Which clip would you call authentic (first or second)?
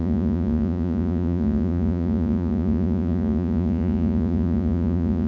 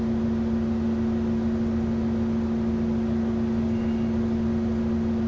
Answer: second